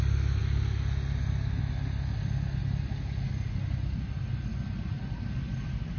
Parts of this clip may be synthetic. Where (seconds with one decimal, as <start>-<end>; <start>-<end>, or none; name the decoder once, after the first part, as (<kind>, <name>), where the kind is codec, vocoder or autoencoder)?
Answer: none